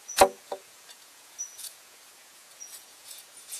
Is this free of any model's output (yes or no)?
no